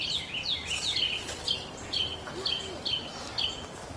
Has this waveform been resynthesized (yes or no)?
no